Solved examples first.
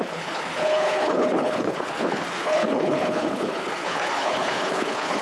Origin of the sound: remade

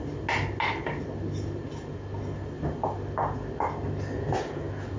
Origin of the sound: recorded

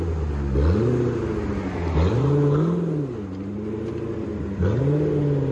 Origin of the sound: recorded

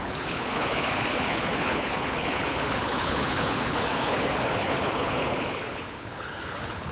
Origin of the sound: remade